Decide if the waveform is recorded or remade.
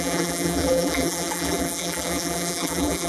remade